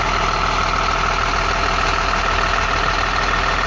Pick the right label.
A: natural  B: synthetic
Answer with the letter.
A